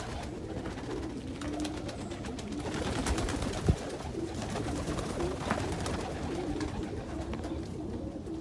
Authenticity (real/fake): real